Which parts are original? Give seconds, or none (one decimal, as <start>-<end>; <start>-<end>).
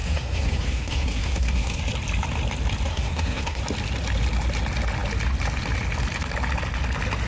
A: 1.8-2.9; 3.6-7.3